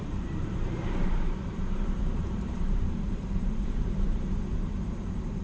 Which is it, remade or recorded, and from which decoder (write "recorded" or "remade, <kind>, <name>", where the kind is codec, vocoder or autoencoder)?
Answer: remade, vocoder, BigVGAN v2